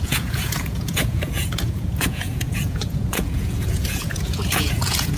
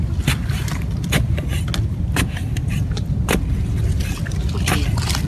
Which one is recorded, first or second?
second